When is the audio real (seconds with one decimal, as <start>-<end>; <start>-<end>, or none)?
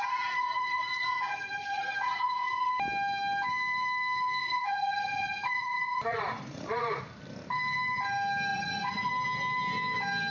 2.7-4.4; 7.0-8.5; 9.1-10.3